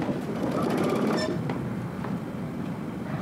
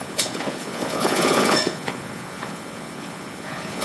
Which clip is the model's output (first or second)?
second